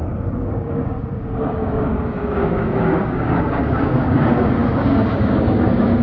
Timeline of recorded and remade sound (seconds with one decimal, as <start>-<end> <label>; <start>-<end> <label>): 0.0-6.0 remade

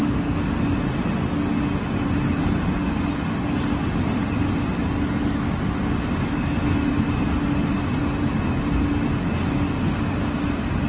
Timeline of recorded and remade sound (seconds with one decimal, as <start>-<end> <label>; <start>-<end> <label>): 0.0-10.9 recorded